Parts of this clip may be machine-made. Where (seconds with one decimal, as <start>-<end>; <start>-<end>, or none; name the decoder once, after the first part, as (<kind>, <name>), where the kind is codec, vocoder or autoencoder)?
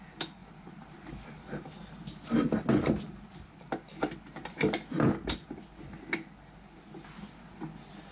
none